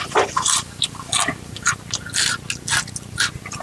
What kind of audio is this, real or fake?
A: real